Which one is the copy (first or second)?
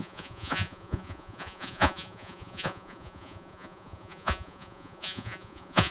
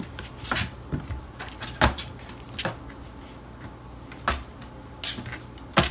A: first